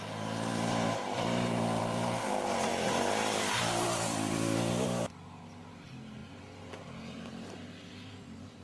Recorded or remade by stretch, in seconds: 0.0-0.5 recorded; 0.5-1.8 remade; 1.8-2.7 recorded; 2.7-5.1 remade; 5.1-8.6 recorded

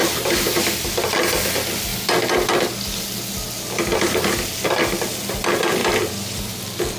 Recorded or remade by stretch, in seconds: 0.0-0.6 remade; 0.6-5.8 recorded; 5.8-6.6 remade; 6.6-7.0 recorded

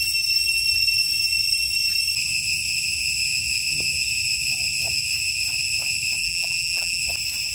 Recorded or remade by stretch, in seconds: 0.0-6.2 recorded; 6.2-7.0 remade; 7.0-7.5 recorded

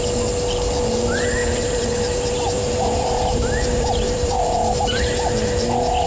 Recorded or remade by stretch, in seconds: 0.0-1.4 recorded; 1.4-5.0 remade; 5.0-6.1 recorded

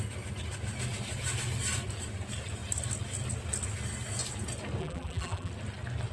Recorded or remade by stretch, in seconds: 0.0-4.8 recorded; 4.8-5.5 remade; 5.5-6.1 recorded

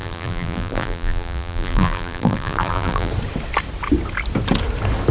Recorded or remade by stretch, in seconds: 0.0-3.1 remade; 3.1-5.1 recorded